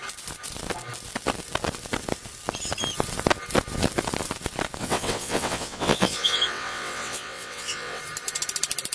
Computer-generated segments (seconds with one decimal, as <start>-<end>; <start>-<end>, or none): 4.8-8.0